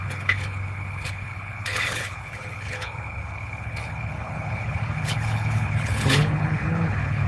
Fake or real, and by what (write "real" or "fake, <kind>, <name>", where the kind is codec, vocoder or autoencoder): fake, codec, HILCodec